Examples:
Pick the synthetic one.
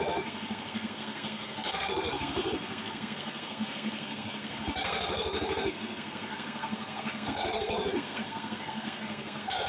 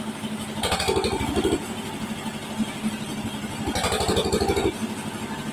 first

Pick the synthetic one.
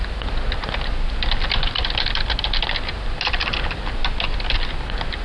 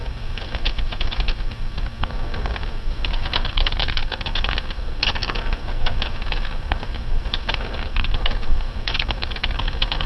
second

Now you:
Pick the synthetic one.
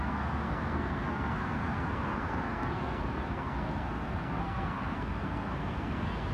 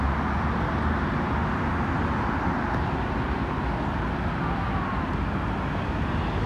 first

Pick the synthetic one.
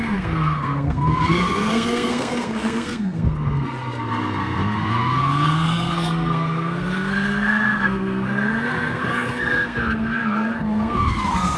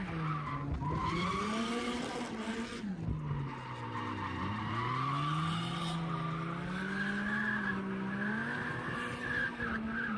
first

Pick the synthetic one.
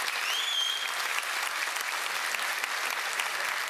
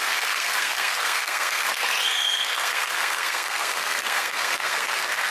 second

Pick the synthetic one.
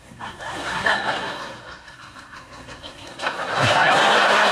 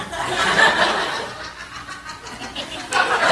first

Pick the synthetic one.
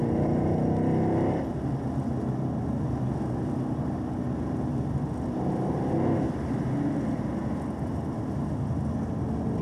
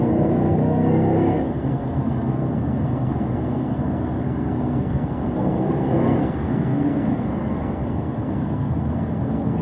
second